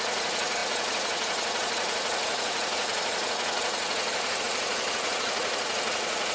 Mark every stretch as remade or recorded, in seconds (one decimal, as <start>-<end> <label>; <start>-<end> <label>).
0.0-6.3 remade